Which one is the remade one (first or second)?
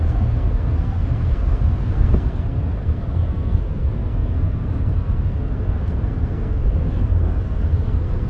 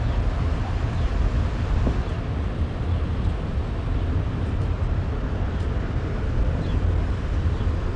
first